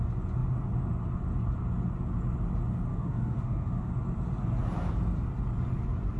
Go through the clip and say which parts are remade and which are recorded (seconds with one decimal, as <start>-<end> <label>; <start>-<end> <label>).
0.0-2.9 recorded; 2.9-3.9 remade; 3.9-6.2 recorded